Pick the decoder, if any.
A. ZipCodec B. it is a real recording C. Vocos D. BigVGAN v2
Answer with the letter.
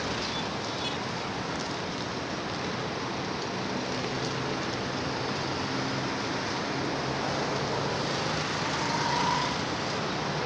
B